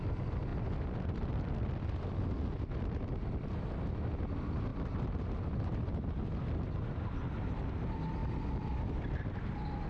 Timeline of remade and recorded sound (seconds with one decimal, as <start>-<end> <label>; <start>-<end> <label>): 0.0-0.5 recorded; 0.5-2.2 remade; 2.2-4.7 recorded; 4.7-5.6 remade; 5.6-9.9 recorded